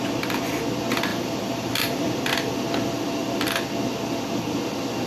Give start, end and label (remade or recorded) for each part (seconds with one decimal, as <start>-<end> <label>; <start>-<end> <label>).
0.0-1.1 recorded; 1.1-2.2 remade; 2.2-5.1 recorded